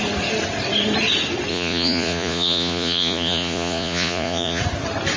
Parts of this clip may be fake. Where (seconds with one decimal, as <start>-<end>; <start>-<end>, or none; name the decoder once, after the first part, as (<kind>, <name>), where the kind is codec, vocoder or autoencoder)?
1.5-4.6 (vocoder, Vocos)